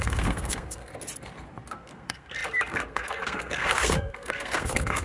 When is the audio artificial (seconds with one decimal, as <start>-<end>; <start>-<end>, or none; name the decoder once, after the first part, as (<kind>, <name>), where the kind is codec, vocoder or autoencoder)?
0.0-0.9 (codec, SNAC); 1.7-5.0